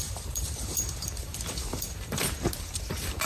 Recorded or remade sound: remade